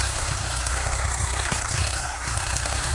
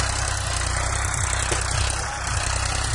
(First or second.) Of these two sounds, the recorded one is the second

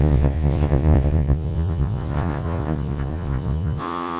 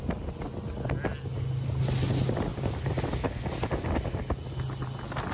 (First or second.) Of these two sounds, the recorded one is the second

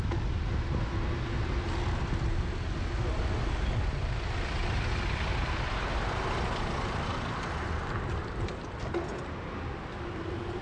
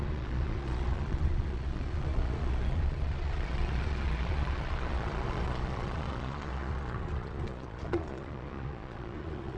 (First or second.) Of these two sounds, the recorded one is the first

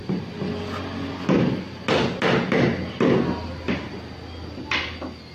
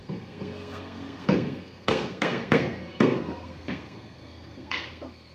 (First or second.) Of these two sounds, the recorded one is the first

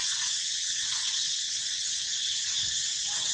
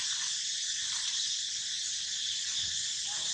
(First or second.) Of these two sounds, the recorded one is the second